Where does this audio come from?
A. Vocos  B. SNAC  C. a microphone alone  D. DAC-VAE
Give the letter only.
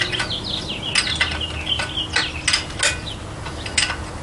C